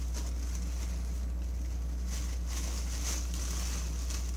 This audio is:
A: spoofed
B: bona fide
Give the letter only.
B